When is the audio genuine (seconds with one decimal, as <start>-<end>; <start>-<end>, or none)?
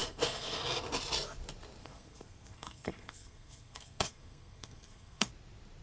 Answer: 0.6-1.8; 5.3-5.8